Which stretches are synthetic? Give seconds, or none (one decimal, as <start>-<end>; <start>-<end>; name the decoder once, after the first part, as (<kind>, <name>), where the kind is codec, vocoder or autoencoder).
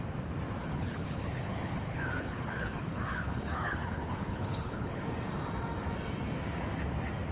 0.6-5.0 (codec, HILCodec)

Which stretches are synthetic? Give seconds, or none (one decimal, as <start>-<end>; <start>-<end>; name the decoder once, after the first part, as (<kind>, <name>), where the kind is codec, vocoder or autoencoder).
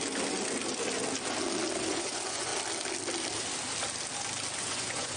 1.9-2.5 (vocoder, Vocos); 4.6-5.2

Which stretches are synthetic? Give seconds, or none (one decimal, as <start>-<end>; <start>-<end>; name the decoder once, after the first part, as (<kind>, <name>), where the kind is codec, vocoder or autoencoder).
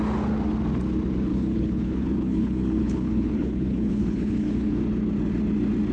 1.3-4.8 (codec, HILCodec)